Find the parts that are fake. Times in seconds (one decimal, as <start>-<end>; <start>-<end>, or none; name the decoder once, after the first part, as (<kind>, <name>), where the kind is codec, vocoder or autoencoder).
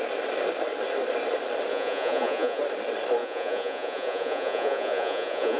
1.7-2.6 (vocoder, Vocos); 3.2-5.6